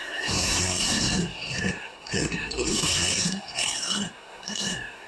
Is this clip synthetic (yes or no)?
yes